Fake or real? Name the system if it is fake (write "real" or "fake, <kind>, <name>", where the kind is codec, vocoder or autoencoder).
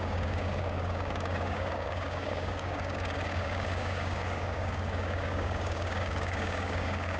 fake, codec, DAC